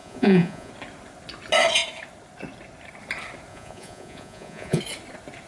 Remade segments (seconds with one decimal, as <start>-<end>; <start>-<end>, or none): 0.0-0.7; 3.5-4.8